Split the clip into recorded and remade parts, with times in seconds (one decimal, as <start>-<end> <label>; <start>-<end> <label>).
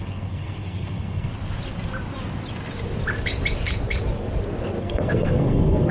0.0-1.3 remade; 1.3-4.8 recorded; 4.8-5.9 remade